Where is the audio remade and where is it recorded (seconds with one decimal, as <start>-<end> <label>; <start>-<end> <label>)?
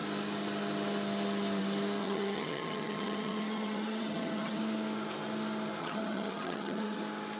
0.0-2.0 recorded; 2.0-4.6 remade; 4.6-5.8 recorded; 5.8-7.0 remade; 7.0-7.4 recorded